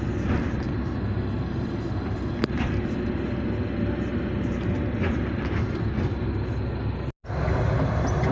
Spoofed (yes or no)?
no